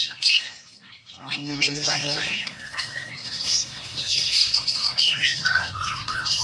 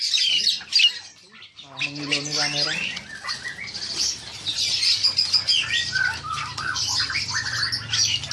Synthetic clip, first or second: first